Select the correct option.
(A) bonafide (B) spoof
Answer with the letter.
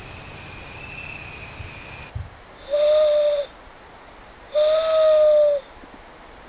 A